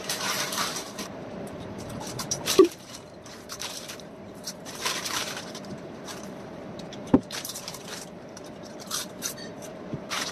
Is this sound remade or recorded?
remade